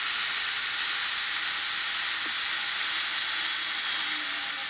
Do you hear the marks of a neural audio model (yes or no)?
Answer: no